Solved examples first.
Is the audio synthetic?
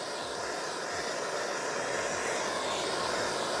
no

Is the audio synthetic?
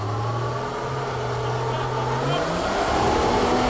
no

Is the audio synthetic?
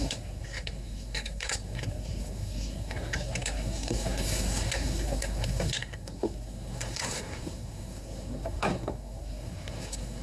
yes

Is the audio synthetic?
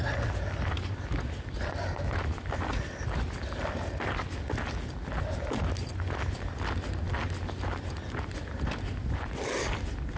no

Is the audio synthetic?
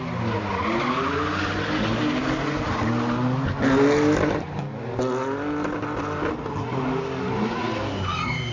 no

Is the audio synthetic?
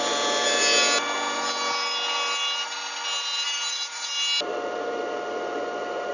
no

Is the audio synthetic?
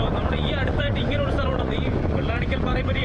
yes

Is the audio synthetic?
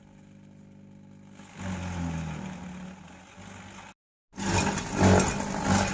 no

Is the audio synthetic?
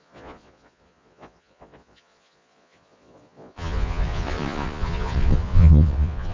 yes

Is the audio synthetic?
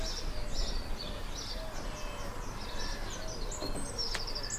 no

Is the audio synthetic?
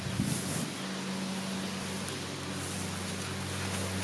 no